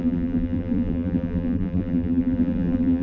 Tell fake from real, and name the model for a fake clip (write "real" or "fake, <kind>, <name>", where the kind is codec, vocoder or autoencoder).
fake, vocoder, BigVGAN v2